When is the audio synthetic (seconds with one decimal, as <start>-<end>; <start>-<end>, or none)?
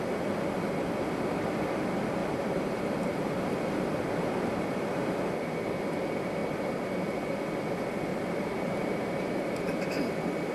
2.2-5.2; 8.1-10.1